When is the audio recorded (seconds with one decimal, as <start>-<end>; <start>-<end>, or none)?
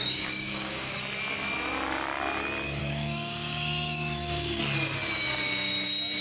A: 1.0-2.8; 4.6-6.2